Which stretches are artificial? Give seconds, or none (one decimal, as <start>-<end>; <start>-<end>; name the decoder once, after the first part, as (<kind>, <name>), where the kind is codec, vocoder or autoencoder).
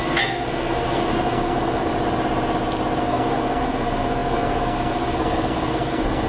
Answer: 0.0-1.9 (codec, SNAC); 3.0-6.3